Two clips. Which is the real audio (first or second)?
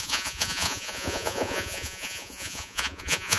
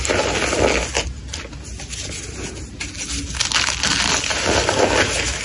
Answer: second